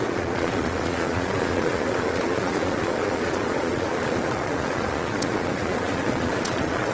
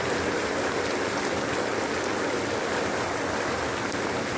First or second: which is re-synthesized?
first